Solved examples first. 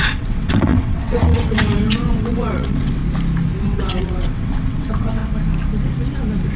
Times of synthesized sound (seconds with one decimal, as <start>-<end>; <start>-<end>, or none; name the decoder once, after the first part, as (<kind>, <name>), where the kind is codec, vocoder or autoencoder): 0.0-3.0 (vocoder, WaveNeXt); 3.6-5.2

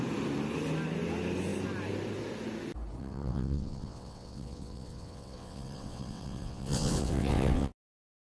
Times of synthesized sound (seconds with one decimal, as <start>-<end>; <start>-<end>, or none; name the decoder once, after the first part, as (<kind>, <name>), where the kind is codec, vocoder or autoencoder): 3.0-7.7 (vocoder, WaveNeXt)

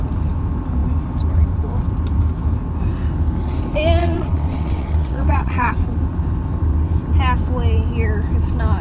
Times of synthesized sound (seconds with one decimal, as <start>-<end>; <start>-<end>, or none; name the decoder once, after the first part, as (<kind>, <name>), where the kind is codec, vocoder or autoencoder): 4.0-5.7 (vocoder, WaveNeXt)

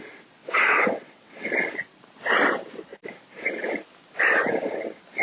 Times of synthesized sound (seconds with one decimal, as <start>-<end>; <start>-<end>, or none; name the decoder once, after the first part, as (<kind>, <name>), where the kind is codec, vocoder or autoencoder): 0.4-1.5 (vocoder, WaveNeXt)

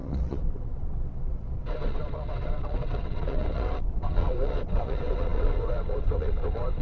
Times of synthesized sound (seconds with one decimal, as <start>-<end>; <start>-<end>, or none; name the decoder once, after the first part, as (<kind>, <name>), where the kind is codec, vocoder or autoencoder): 0.0-6.8 (vocoder, WaveNeXt)

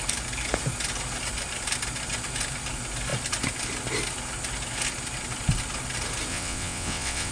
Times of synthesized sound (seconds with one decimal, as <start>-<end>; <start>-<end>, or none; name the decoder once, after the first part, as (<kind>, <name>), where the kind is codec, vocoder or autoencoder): 6.3-7.3 (vocoder, WaveNeXt)

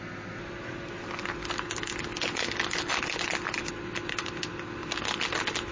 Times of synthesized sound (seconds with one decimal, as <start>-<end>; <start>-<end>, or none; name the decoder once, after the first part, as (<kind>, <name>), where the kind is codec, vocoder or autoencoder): none

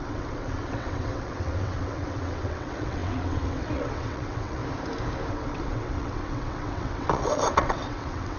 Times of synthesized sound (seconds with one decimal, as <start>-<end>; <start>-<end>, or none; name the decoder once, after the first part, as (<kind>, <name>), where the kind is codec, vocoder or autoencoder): 0.0-4.6 (vocoder, WaveNeXt); 5.3-8.4